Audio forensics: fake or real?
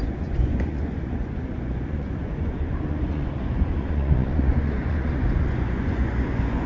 fake